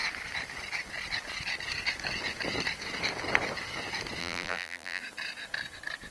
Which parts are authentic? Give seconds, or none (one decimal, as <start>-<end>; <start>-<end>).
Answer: 0.0-4.2; 5.0-6.1